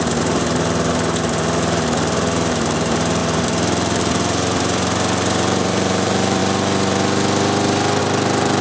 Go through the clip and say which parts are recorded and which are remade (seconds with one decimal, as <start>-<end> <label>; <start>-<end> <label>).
0.0-6.4 remade; 6.4-8.0 recorded; 8.0-8.6 remade